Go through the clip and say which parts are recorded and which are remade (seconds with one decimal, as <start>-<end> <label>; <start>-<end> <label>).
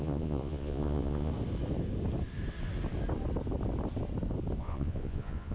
0.0-1.3 remade; 1.3-4.6 recorded; 4.6-5.5 remade